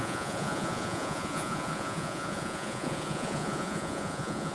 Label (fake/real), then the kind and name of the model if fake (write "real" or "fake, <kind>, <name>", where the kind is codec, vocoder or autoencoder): fake, vocoder, Vocos